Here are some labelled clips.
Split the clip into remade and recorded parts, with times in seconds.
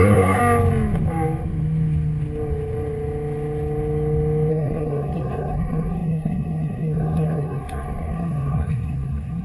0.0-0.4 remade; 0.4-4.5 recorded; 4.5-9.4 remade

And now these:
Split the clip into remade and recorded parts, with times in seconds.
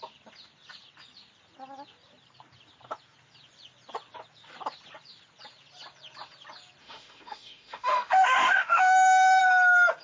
0.0-6.8 recorded; 6.8-9.4 remade; 9.4-10.0 recorded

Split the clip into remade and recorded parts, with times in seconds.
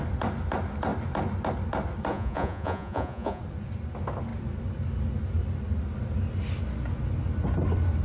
0.0-2.1 recorded; 2.1-3.4 remade; 3.4-8.0 recorded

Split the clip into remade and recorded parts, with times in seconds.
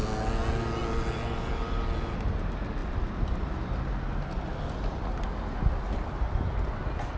0.0-7.2 recorded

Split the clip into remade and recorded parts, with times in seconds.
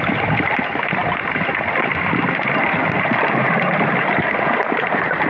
0.0-5.3 recorded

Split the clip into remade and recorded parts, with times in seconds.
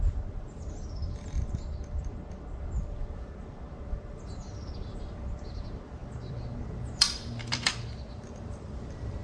0.0-9.2 remade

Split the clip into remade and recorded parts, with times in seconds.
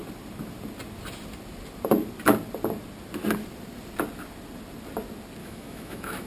0.0-5.4 recorded; 5.4-6.3 remade